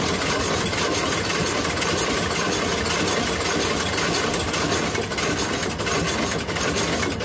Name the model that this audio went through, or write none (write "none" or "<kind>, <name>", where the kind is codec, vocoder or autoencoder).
none